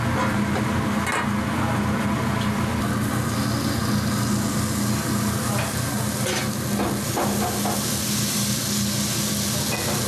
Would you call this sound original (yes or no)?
yes